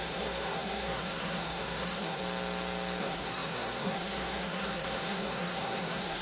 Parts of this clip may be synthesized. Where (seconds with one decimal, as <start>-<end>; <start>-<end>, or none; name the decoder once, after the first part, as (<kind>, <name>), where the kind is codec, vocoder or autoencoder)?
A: 0.0-2.2 (codec, SNAC); 3.0-6.2